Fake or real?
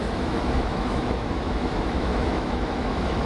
fake